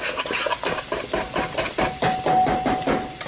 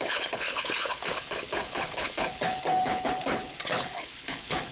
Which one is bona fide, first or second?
first